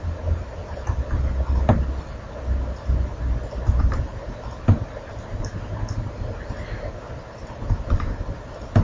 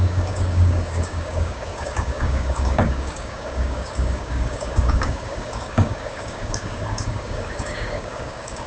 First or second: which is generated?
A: second